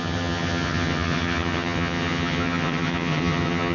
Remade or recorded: remade